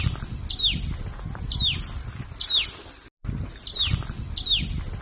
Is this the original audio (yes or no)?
yes